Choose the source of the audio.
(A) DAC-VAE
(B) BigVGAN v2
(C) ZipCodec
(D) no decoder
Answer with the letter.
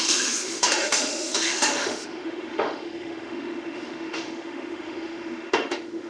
A